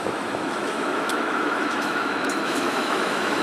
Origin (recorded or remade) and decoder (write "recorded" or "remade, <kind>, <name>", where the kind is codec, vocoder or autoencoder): remade, autoencoder, DAC-VAE